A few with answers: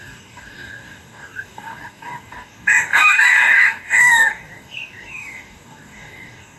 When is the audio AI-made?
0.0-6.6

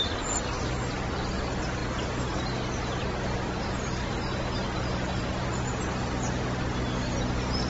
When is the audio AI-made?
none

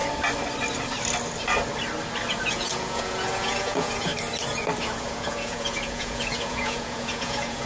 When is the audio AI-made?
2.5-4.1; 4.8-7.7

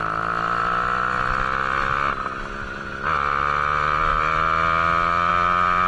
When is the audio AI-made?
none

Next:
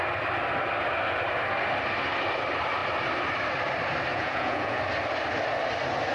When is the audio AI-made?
4.1-4.8